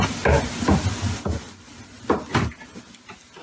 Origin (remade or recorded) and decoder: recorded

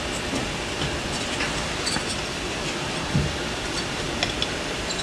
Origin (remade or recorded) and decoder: remade, vocoder, BigVGAN v2